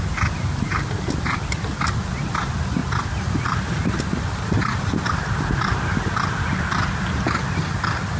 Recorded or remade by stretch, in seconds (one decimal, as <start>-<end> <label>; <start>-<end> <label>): 0.0-8.2 recorded